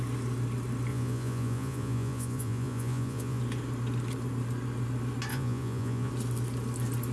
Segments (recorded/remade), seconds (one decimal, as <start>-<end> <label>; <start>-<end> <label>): 0.0-0.9 recorded; 0.9-3.4 remade; 3.4-5.3 recorded; 5.3-6.1 remade; 6.1-7.1 recorded